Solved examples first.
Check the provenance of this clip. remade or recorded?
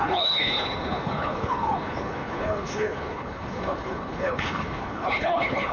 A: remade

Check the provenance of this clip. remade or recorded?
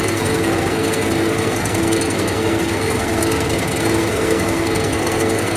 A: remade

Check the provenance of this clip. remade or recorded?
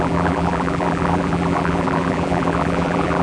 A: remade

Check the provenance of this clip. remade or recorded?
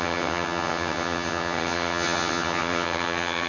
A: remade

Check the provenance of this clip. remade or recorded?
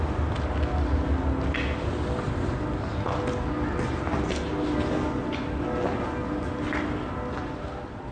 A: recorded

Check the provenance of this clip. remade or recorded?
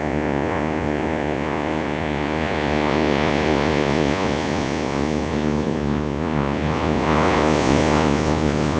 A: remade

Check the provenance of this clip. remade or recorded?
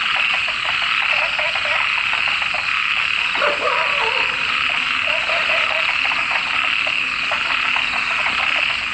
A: recorded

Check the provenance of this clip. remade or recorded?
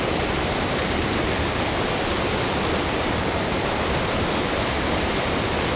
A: remade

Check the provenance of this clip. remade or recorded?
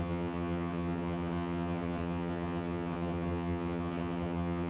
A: remade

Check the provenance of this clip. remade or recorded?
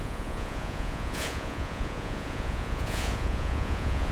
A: remade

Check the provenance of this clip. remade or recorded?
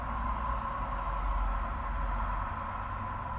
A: recorded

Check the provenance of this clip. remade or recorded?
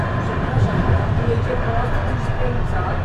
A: recorded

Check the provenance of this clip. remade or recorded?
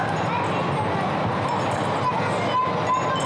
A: recorded